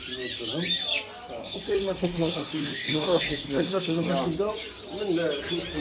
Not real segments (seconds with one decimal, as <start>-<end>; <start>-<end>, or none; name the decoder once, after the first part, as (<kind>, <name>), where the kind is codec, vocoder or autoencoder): 1.4-4.1 (codec, SNAC)